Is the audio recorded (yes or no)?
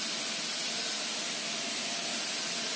yes